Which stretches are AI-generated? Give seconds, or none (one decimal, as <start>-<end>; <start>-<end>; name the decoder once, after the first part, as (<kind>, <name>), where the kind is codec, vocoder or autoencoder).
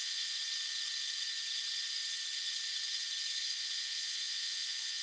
0.0-0.4 (vocoder, Vocos); 3.4-5.0